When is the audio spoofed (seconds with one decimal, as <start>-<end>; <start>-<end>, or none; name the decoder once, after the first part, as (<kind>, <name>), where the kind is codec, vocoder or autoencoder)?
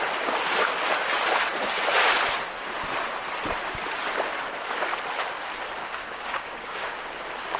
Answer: 5.8-7.1 (codec, DAC)